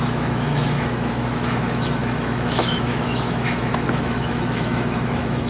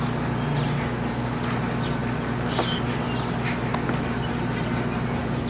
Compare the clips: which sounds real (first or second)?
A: second